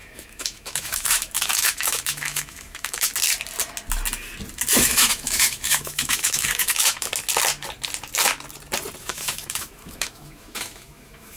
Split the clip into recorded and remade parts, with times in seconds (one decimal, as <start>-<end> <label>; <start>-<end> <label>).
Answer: 0.0-3.1 remade; 3.1-4.8 recorded; 4.8-7.1 remade; 7.1-9.0 recorded; 9.0-11.4 remade